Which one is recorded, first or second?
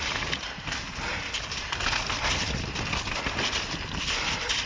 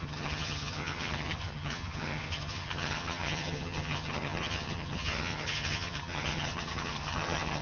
first